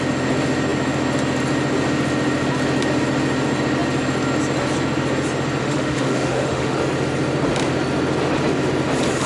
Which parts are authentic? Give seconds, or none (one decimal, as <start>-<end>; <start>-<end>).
0.0-5.6; 6.8-9.3